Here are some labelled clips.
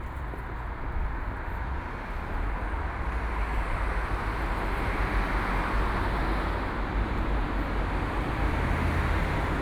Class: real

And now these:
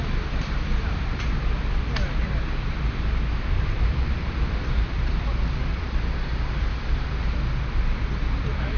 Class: fake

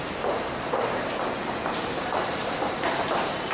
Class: fake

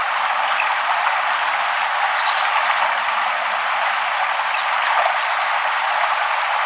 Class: real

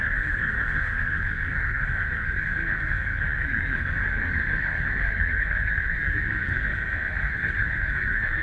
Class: fake